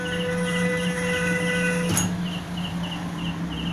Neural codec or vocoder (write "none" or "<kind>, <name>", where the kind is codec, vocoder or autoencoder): none